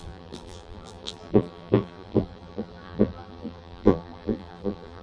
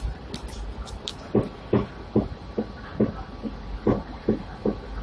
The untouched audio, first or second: second